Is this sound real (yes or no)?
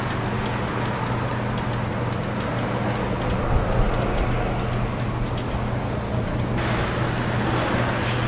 yes